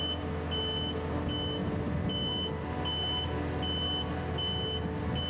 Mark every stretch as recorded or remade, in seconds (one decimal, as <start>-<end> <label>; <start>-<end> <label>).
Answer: 0.0-5.3 recorded